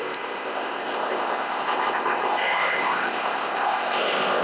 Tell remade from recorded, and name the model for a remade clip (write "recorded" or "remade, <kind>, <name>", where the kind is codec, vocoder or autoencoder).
remade, codec, ZipCodec